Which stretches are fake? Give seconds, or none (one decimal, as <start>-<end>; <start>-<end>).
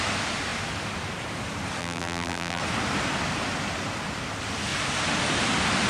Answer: 1.8-2.6